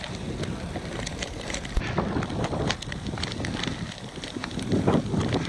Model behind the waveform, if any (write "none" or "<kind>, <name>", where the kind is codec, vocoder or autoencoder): none